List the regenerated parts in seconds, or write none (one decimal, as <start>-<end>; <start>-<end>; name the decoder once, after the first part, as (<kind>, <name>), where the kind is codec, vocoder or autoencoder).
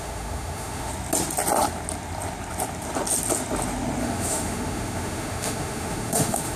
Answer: 0.0-0.9 (autoencoder, DAC-VAE); 4.0-6.6